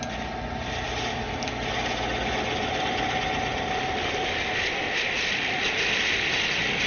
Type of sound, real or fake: real